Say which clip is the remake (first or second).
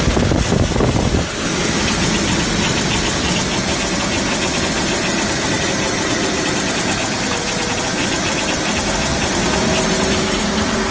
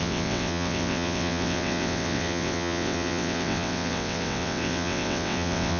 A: second